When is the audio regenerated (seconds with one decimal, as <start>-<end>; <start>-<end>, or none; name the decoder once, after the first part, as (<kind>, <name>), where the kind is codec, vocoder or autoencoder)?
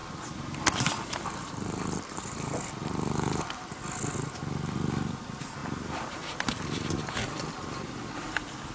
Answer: none